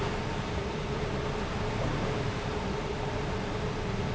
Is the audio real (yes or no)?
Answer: yes